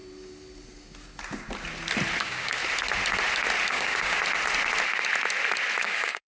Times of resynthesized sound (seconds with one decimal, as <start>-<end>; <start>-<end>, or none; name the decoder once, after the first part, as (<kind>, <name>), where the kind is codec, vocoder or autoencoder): 2.2-2.6 (codec, DAC); 3.7-4.2; 5.8-6.4